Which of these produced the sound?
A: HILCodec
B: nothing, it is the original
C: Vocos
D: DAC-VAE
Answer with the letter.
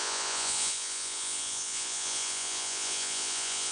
C